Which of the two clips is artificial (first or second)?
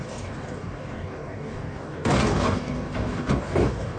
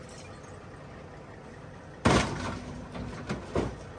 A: first